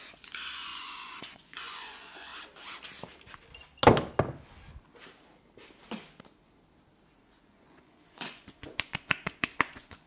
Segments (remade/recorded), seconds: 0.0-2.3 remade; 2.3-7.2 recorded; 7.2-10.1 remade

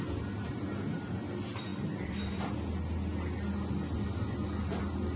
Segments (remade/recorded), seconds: 0.0-5.2 recorded

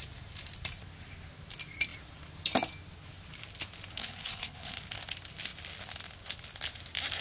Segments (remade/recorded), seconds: 0.0-4.0 recorded; 4.0-4.8 remade; 4.8-7.2 recorded

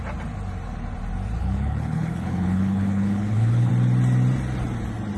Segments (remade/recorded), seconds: 0.0-1.4 recorded; 1.4-3.7 remade; 3.7-5.2 recorded

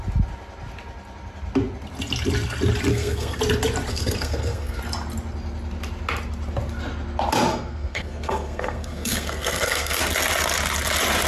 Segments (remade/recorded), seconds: 0.0-2.9 recorded; 2.9-3.4 remade; 3.4-3.9 recorded; 3.9-4.8 remade; 4.8-7.5 recorded; 7.5-10.0 remade; 10.0-11.3 recorded

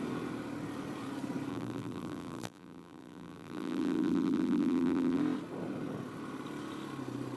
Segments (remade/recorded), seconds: 0.0-1.5 recorded; 1.5-5.2 remade; 5.2-7.4 recorded

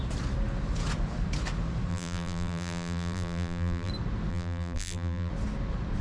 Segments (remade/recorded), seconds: 0.0-1.9 recorded; 1.9-3.9 remade; 3.9-4.3 recorded; 4.3-5.3 remade; 5.3-6.0 recorded